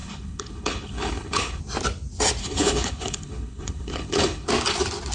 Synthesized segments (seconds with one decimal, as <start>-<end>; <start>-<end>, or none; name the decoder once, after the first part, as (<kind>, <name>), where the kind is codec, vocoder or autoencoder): 0.0-1.6 (codec, HILCodec); 2.4-4.5